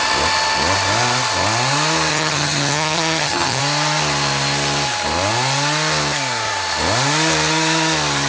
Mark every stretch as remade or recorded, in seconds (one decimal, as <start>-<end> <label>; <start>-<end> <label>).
0.0-2.1 recorded; 2.1-3.6 remade; 3.6-8.3 recorded